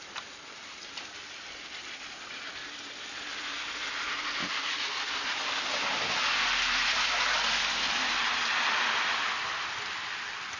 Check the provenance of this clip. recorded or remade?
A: recorded